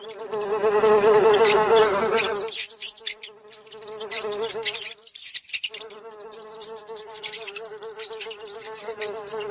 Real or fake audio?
real